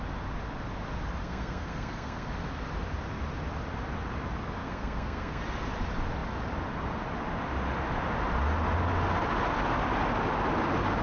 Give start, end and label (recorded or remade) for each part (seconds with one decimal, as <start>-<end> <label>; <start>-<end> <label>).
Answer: 0.0-1.2 recorded; 1.2-2.3 remade; 2.3-4.6 recorded; 4.6-5.4 remade; 5.4-11.0 recorded